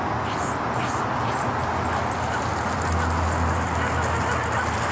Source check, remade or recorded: recorded